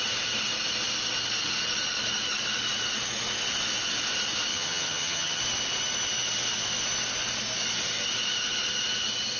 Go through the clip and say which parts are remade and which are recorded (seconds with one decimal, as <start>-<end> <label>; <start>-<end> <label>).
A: 0.0-4.5 recorded; 4.5-5.4 remade; 5.4-9.4 recorded